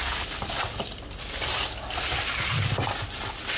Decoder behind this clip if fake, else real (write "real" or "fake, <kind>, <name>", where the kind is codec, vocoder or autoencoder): real